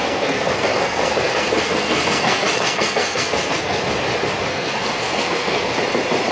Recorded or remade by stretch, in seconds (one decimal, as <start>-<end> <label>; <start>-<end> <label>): 0.0-3.8 remade; 3.8-4.5 recorded; 4.5-5.7 remade; 5.7-6.3 recorded